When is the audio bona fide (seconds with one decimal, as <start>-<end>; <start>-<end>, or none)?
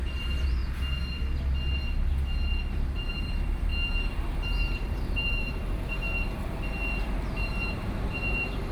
0.6-2.7; 3.7-4.3